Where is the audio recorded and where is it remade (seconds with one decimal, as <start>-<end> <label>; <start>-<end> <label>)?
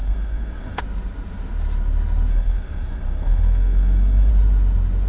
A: 0.0-0.8 remade; 0.8-2.3 recorded; 2.3-4.3 remade; 4.3-5.1 recorded